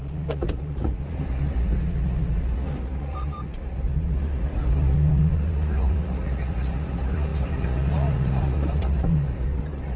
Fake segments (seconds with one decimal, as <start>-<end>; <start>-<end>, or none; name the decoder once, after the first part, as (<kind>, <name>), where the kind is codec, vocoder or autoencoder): 0.0-10.0 (vocoder, Vocos)